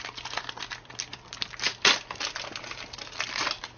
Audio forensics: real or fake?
real